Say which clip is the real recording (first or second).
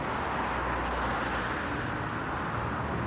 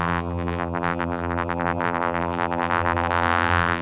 first